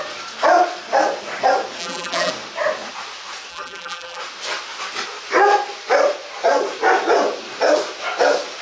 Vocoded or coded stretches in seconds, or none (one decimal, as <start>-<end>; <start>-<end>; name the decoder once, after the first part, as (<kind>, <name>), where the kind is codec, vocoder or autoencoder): 1.8-2.3 (vocoder, BigVGAN v2); 3.5-4.2

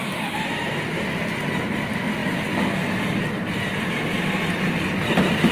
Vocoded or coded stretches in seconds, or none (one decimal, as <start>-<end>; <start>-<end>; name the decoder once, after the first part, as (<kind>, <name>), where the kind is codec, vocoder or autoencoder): 2.2-5.5 (vocoder, BigVGAN v2)

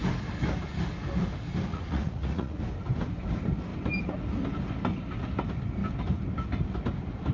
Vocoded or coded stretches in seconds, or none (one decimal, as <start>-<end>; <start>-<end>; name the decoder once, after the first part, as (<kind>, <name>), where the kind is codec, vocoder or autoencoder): 1.7-2.6 (vocoder, Vocos)

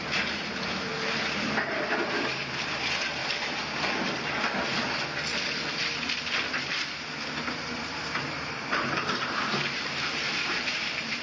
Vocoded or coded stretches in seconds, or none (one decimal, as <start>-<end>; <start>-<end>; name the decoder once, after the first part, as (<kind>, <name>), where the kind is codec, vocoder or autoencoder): 0.0-0.9 (vocoder, BigVGAN v2); 2.1-3.2; 7.7-11.2

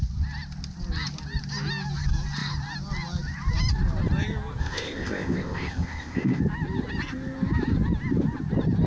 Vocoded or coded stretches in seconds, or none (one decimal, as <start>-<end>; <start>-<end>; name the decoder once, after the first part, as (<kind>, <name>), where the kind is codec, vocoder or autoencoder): 4.6-6.4 (codec, ZipCodec)

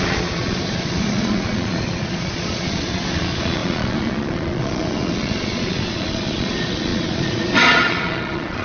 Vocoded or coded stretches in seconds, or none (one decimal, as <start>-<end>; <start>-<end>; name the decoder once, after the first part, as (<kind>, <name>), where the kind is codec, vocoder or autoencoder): 0.0-8.6 (vocoder, Vocos)